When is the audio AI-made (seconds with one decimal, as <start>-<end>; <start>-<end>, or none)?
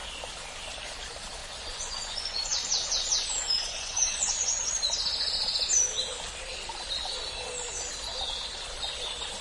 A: 1.4-4.7